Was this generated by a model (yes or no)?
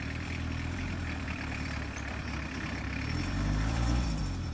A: yes